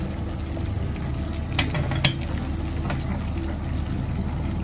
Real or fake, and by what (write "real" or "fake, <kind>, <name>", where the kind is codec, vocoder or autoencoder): real